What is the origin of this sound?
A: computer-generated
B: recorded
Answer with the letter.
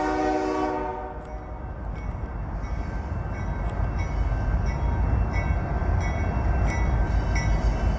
B